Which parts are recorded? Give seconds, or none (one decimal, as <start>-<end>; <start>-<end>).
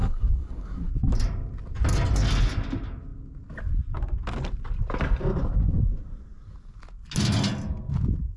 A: 0.9-8.4